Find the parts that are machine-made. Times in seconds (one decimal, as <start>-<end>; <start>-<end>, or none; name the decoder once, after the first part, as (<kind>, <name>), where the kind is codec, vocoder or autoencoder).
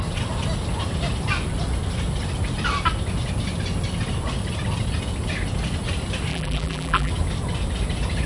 6.3-7.1 (vocoder, BigVGAN v2)